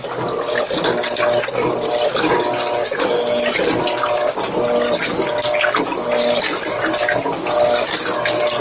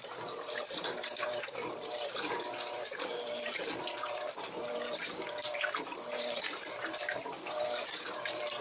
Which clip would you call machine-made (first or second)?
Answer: second